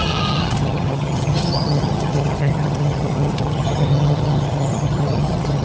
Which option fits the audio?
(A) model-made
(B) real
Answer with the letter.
A